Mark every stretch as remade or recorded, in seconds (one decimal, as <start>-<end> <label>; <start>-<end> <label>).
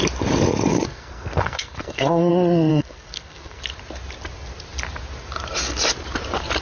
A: 0.0-0.7 recorded; 0.7-2.3 remade; 2.3-2.7 recorded; 2.7-3.6 remade; 3.6-6.6 recorded